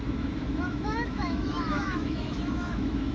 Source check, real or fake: fake